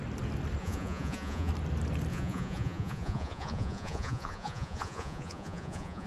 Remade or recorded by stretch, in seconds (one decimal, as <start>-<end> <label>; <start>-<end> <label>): 0.0-0.6 recorded; 0.6-1.5 remade; 1.5-2.1 recorded; 2.1-6.1 remade